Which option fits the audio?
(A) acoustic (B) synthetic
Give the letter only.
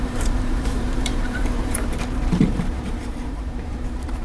B